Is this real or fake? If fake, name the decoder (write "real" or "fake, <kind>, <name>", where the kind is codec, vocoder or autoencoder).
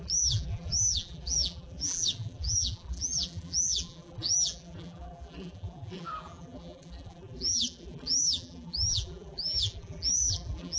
fake, vocoder, BigVGAN v2